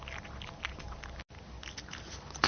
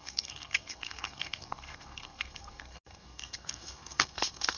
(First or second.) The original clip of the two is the first